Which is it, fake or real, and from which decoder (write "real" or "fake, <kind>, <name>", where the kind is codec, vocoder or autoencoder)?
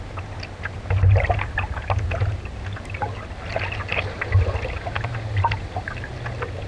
real